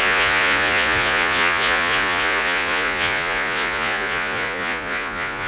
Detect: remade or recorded remade